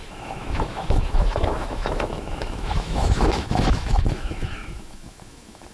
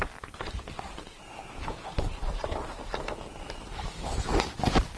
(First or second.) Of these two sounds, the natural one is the second